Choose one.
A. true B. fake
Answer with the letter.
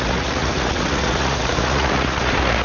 B